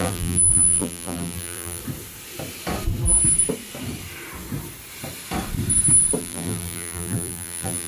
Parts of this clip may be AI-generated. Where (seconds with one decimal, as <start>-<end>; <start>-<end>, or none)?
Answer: 0.0-1.8; 6.2-7.9